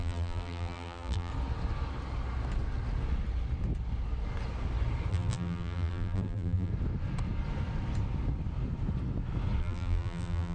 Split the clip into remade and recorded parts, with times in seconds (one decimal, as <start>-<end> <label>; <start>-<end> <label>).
0.0-1.3 remade; 1.3-5.1 recorded; 5.1-6.7 remade; 6.7-9.6 recorded; 9.6-10.5 remade